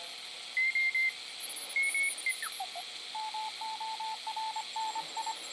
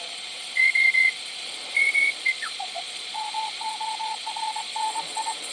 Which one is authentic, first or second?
first